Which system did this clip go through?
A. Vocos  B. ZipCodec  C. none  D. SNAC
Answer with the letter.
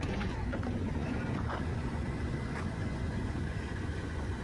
A